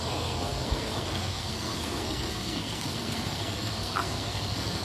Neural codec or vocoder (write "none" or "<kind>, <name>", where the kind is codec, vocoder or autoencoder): codec, SNAC